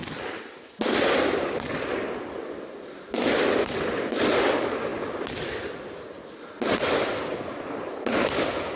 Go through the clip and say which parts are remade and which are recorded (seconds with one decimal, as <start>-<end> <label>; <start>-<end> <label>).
0.0-8.8 recorded